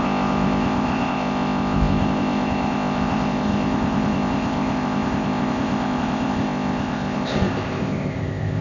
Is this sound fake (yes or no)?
yes